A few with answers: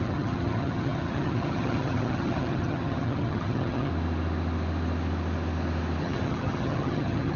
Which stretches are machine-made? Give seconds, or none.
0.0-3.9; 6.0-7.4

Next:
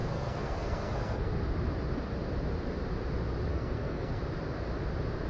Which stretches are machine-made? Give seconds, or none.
0.0-1.3; 3.5-4.2